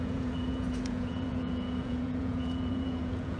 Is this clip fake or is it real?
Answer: fake